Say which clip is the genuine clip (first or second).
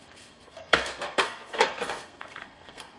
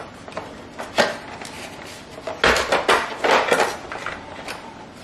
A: second